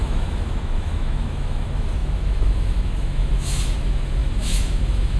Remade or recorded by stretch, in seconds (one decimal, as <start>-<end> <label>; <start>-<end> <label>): 0.0-5.2 remade